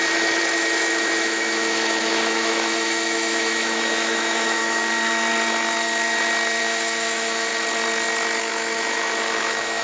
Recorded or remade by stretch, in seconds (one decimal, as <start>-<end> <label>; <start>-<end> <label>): 0.0-4.8 remade; 4.8-6.6 recorded; 6.6-7.5 remade; 7.5-8.4 recorded; 8.4-9.8 remade